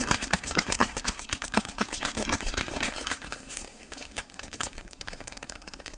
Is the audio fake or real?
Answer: fake